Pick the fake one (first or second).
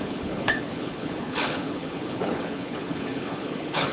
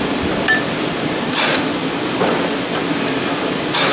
first